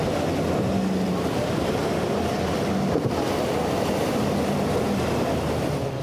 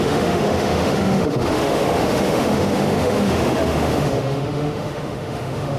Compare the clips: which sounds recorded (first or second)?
first